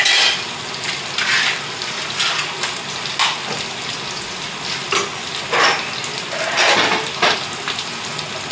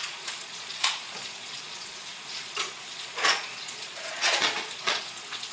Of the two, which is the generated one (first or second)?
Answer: second